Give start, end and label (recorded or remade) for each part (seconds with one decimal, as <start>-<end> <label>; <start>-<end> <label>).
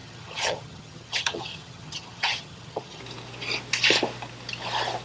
0.0-3.0 remade; 3.0-5.0 recorded